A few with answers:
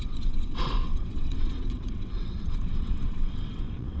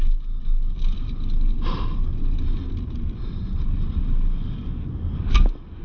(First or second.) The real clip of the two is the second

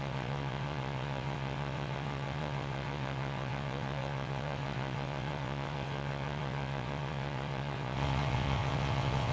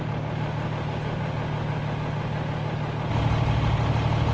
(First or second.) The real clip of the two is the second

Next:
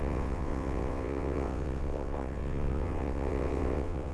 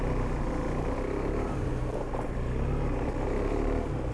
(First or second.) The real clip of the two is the second